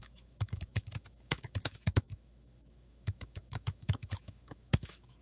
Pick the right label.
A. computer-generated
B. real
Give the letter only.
A